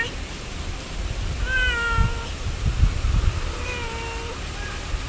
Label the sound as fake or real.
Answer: real